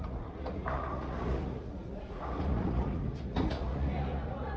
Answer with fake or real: fake